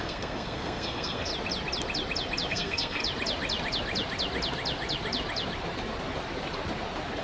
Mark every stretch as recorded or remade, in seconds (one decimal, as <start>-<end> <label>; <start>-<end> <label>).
0.0-1.3 remade; 1.3-2.5 recorded; 2.5-3.0 remade; 3.0-7.2 recorded